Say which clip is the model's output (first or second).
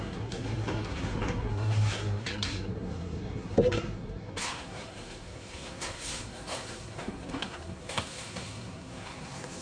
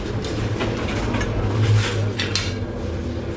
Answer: first